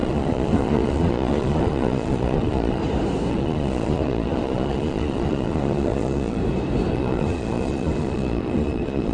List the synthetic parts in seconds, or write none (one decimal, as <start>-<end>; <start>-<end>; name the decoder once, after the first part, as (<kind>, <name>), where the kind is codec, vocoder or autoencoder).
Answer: 0.0-2.8 (vocoder, Vocos); 3.3-6.4; 6.9-9.1